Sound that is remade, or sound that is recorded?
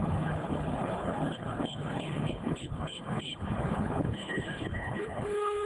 remade